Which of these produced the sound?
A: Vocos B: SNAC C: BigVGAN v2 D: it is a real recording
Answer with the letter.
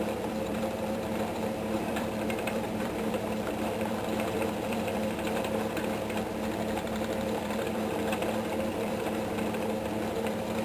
C